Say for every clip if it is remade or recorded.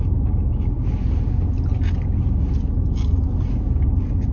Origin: recorded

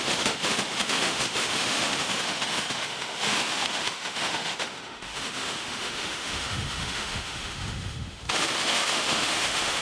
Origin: remade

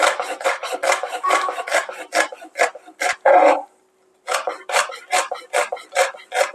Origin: recorded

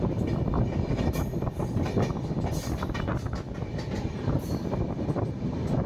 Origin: recorded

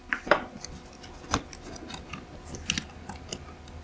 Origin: recorded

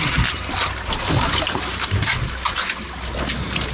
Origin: recorded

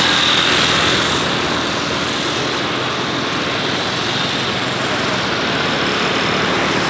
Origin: recorded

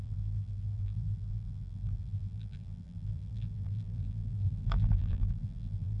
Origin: remade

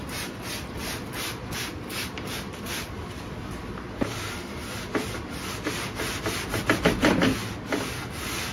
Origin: recorded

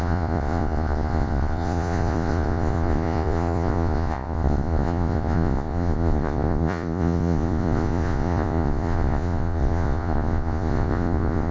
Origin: remade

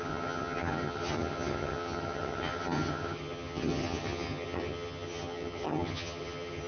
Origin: remade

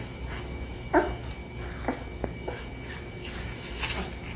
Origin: recorded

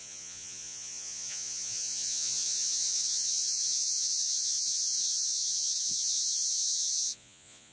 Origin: remade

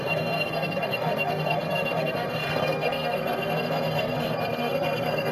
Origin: remade